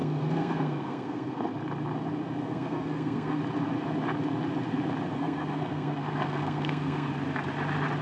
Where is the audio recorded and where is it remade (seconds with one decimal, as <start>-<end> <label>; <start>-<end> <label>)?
0.0-1.4 remade; 1.4-2.4 recorded; 2.4-3.4 remade; 3.4-5.1 recorded; 5.1-7.1 remade; 7.1-8.0 recorded